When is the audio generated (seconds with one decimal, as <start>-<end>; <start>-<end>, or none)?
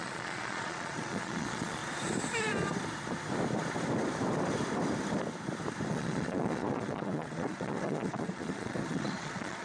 0.0-1.8; 5.9-9.6